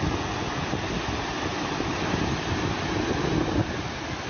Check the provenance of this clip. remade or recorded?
recorded